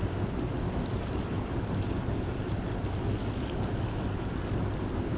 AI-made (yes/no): no